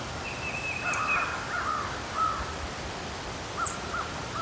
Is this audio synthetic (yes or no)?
yes